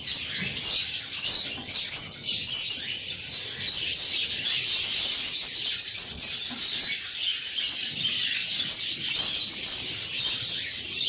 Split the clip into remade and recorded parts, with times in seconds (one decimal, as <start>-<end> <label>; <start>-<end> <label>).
0.0-11.1 recorded